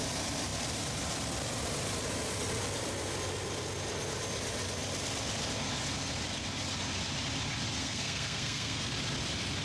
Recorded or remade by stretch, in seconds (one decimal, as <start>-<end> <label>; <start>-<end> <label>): 0.0-7.8 recorded; 7.8-8.9 remade; 8.9-9.6 recorded

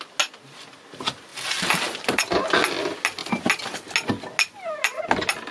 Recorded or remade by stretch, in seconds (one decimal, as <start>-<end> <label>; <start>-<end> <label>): 0.0-5.5 recorded

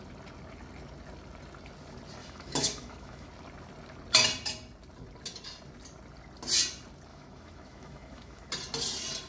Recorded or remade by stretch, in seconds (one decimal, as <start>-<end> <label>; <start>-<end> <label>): 0.0-2.2 recorded; 2.2-3.3 remade; 3.3-7.1 recorded; 7.1-8.5 remade; 8.5-9.3 recorded

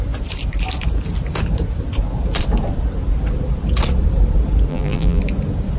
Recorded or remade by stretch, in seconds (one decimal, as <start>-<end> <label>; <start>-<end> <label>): 0.0-4.7 recorded; 4.7-5.2 remade; 5.2-5.8 recorded

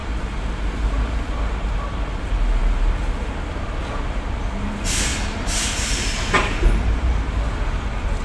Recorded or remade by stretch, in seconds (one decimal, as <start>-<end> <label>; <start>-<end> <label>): 0.0-2.1 remade; 2.1-5.1 recorded; 5.1-7.4 remade; 7.4-8.2 recorded